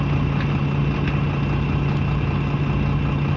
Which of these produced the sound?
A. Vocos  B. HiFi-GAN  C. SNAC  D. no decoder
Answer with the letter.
D